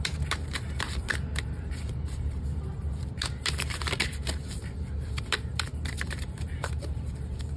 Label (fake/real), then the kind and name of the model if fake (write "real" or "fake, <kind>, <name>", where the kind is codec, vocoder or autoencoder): fake, vocoder, BigVGAN v2